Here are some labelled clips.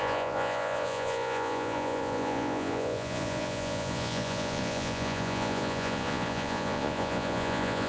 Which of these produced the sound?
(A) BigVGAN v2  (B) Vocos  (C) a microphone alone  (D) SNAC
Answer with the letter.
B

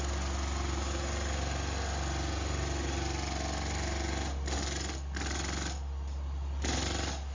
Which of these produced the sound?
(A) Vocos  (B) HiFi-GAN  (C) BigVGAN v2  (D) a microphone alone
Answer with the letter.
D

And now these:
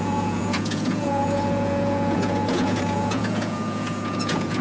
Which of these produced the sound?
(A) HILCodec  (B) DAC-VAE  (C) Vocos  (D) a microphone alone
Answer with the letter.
C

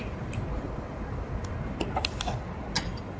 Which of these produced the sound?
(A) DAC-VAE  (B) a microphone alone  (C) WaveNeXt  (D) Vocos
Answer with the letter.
B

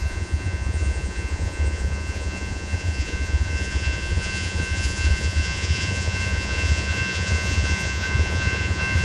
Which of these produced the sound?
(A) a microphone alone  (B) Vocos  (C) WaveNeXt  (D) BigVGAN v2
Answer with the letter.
B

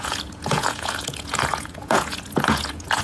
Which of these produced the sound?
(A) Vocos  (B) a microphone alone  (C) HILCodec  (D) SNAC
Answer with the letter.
A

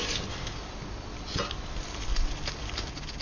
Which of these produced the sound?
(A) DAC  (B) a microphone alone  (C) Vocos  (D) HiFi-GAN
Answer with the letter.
B